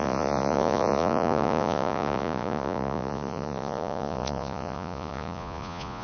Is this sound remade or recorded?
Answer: remade